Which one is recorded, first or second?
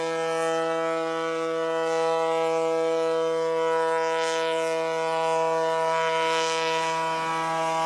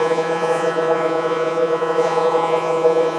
first